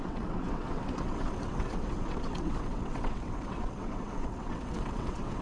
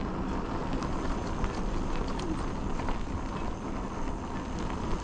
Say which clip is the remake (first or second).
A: first